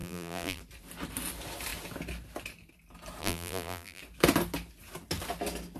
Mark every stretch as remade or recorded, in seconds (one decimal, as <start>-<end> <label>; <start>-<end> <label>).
0.0-0.6 remade; 0.6-3.2 recorded; 3.2-4.0 remade; 4.0-5.8 recorded